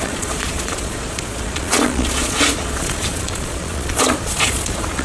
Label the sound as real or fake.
fake